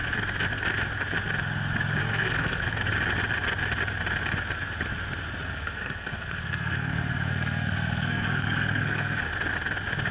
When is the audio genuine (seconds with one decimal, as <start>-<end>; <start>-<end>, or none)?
0.0-2.0; 2.9-5.5; 9.3-10.1